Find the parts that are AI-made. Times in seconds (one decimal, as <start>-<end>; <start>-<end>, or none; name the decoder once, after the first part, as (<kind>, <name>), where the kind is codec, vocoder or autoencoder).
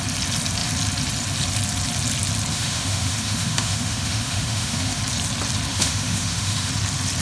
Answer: 2.5-5.0 (autoencoder, DAC-VAE); 5.7-6.7